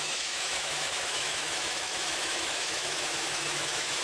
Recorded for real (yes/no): no